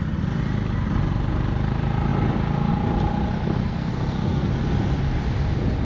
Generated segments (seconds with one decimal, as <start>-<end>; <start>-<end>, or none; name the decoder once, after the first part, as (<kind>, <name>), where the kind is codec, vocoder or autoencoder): 3.6-4.5 (codec, SNAC)